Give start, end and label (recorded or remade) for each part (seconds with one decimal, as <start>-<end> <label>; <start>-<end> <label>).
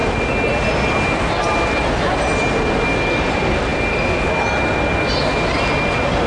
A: 0.0-6.3 recorded